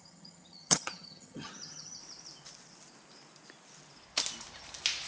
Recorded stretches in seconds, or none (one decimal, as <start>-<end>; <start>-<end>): 2.0-5.1